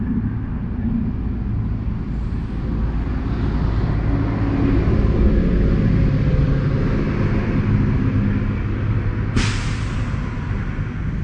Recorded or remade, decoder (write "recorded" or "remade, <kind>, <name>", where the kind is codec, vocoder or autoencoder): recorded